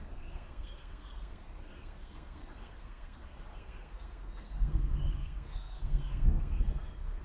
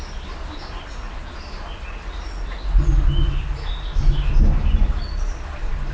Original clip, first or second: second